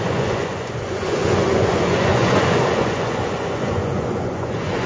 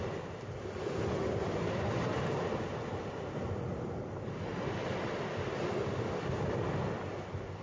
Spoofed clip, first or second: first